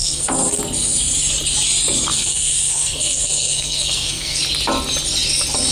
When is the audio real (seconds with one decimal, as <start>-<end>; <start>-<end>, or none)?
0.6-2.1; 4.4-5.7